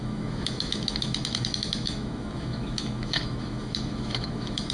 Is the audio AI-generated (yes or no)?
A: yes